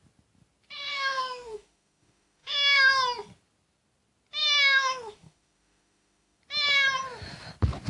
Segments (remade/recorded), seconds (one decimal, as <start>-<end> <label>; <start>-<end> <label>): 0.0-0.9 recorded; 0.9-2.8 remade; 2.8-4.4 recorded; 4.4-6.4 remade; 6.4-7.9 recorded